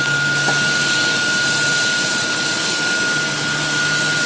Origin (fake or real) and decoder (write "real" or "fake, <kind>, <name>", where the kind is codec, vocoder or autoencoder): real